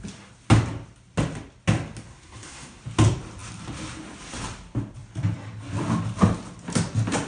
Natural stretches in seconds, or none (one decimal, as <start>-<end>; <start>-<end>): 0.0-2.1; 2.8-7.3